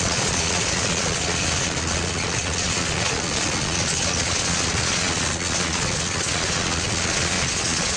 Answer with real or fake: fake